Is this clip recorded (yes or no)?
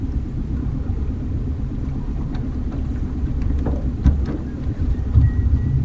no